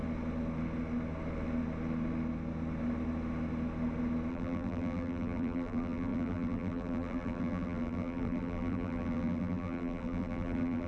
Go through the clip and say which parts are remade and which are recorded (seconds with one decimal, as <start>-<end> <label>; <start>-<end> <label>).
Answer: 0.0-4.3 recorded; 4.3-10.9 remade